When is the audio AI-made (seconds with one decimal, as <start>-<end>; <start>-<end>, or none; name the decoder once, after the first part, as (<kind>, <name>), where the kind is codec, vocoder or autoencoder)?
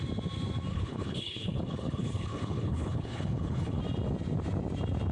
0.7-3.8 (codec, HILCodec)